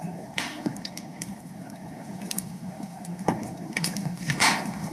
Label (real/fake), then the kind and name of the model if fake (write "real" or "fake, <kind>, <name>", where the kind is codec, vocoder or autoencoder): fake, codec, SNAC